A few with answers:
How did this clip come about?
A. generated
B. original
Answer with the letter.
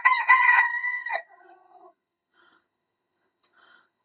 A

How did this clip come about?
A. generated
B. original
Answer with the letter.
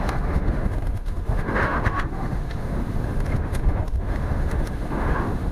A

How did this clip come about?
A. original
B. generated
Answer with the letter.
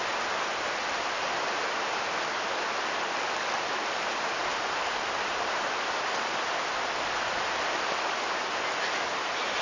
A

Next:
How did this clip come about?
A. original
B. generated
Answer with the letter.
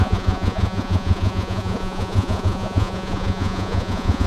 B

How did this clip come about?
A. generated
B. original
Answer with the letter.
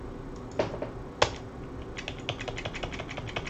B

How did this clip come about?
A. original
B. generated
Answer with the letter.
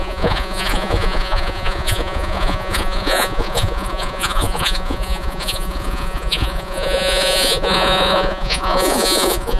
B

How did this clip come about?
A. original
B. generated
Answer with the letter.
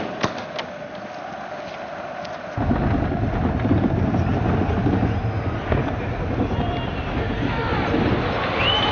A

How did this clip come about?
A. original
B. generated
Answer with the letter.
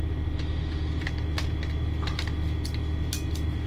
A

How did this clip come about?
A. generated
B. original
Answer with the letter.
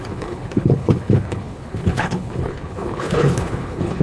A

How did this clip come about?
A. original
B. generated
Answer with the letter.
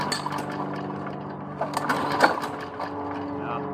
A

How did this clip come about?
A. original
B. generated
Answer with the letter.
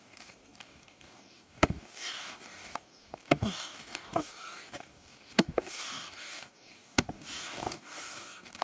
B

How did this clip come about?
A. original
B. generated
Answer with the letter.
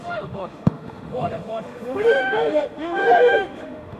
B